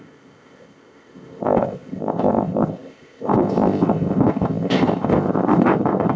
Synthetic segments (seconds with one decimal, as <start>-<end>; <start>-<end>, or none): 0.0-6.2